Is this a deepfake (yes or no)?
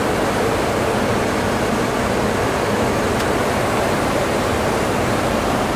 no